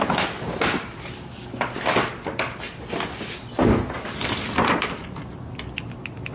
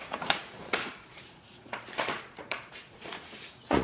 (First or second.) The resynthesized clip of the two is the second